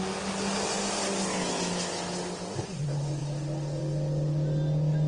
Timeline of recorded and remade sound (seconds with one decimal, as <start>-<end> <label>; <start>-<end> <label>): 0.0-5.1 recorded